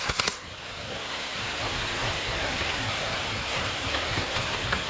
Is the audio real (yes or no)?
no